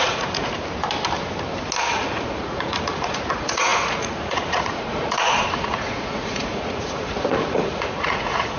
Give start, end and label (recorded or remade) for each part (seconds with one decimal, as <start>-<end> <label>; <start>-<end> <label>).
0.0-0.5 remade; 0.5-1.9 recorded; 1.9-8.6 remade